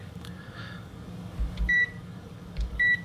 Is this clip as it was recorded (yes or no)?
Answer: no